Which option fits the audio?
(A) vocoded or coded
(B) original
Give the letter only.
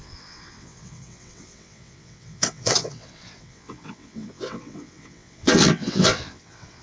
A